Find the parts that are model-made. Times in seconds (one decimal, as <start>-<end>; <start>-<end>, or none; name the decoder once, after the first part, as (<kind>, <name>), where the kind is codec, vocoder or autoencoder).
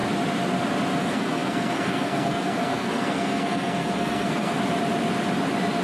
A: 1.0-4.5 (codec, SNAC)